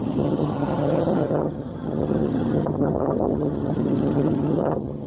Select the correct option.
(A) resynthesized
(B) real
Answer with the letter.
A